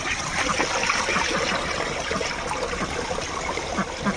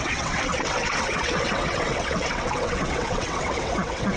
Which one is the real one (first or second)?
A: first